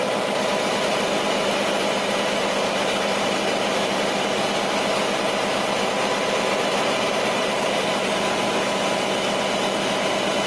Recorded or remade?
recorded